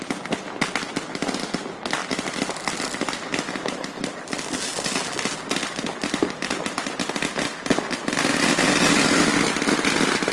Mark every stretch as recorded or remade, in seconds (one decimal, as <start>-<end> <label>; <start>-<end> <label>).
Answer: 0.0-10.3 recorded